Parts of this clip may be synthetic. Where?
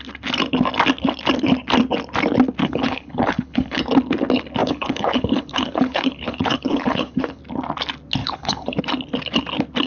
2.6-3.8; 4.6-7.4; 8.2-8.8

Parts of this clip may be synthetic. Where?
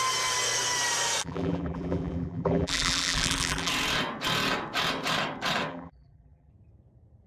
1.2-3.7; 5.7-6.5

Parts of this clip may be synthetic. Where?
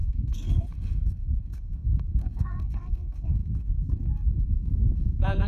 0.0-5.5